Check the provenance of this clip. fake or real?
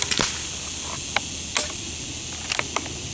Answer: real